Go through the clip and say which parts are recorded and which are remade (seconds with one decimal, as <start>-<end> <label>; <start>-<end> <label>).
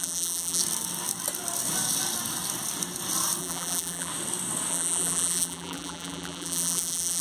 0.0-0.6 remade; 0.6-3.4 recorded; 3.4-4.1 remade; 4.1-4.7 recorded; 4.7-7.2 remade